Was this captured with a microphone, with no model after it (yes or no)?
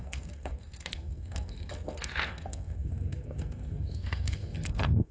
no